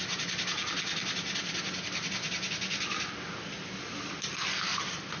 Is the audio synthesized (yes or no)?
no